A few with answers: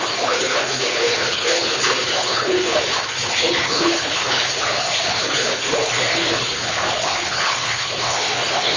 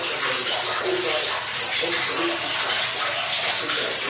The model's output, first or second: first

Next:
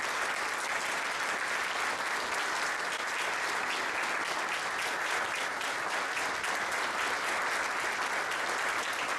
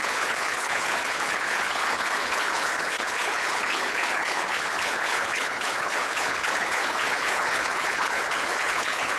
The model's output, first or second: second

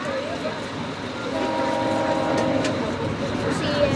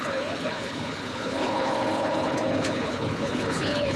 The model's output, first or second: second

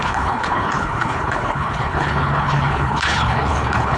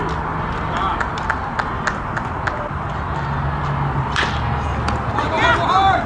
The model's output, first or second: first